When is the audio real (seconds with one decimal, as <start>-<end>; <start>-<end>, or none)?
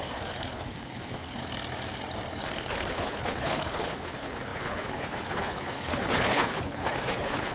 1.4-2.4